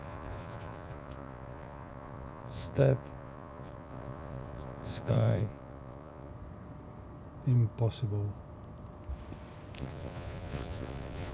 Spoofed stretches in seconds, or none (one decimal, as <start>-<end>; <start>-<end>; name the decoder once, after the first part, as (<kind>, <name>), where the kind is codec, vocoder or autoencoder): 0.0-6.3 (vocoder, Vocos); 9.8-11.3

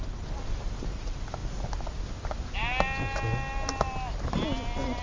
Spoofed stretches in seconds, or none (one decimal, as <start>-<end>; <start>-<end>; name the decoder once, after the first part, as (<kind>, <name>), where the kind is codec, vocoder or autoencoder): none